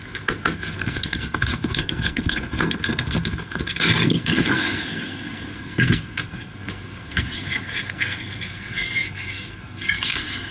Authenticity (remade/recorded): remade